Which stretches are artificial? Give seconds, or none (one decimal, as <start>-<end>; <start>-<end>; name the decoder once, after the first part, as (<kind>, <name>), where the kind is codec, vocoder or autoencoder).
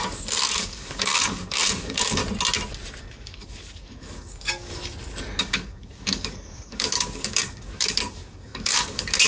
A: 0.0-2.2 (codec, DAC); 3.0-4.7; 5.4-9.3